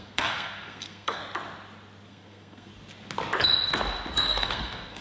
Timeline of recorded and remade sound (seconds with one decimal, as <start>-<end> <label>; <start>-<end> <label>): 0.0-1.2 remade; 1.2-2.1 recorded; 2.1-2.7 remade; 2.7-4.1 recorded; 4.1-5.0 remade